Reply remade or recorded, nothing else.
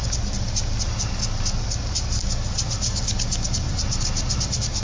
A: recorded